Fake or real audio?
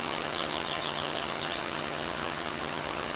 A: fake